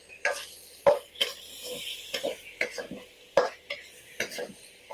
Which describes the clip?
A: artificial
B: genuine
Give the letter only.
A